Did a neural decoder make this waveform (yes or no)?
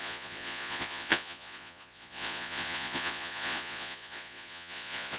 yes